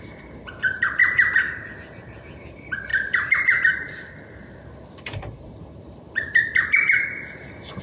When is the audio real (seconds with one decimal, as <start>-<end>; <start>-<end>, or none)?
1.0-2.0